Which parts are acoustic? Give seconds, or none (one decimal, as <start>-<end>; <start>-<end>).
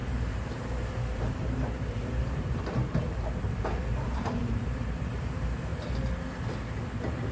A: 5.7-7.3